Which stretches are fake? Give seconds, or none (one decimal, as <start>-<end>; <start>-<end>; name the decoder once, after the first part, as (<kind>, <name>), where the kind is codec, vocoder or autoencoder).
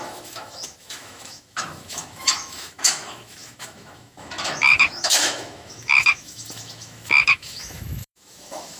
0.0-8.8 (autoencoder, DAC-VAE)